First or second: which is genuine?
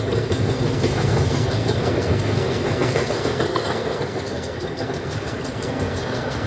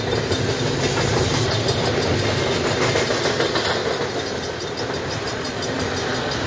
second